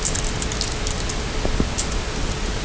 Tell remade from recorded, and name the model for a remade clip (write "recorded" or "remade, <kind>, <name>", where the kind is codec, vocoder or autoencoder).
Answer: recorded